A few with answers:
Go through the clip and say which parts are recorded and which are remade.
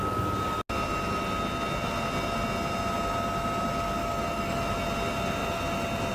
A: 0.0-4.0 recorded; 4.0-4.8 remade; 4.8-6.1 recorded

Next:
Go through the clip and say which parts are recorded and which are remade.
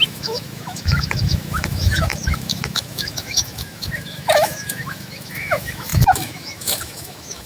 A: 0.0-7.5 remade